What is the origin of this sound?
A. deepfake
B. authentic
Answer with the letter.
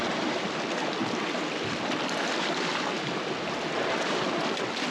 B